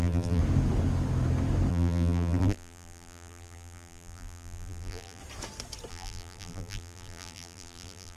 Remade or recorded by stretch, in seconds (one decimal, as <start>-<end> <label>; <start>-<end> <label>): 0.0-0.4 remade; 0.4-1.7 recorded; 1.7-5.2 remade; 5.2-5.9 recorded; 5.9-8.2 remade